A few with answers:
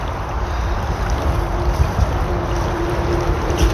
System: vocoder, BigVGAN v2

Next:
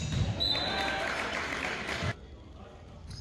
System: none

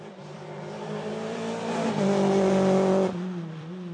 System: vocoder, BigVGAN v2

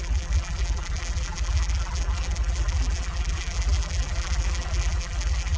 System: vocoder, BigVGAN v2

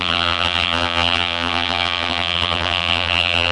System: vocoder, BigVGAN v2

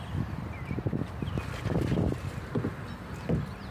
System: none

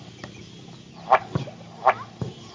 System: none